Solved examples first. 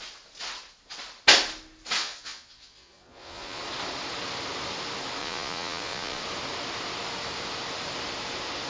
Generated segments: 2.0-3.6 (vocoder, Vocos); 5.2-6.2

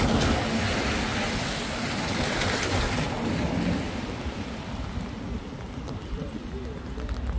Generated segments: none

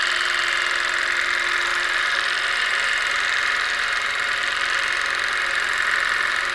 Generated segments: 1.7-4.4 (vocoder, BigVGAN v2)